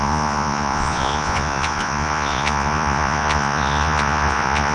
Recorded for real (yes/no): no